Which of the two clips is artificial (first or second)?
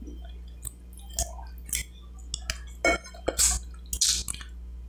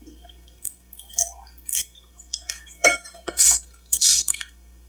second